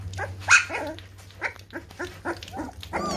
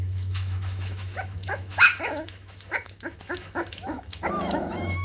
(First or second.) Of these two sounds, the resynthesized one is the second